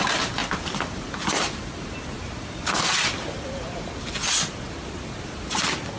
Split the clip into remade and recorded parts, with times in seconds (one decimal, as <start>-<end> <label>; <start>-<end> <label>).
0.0-6.0 recorded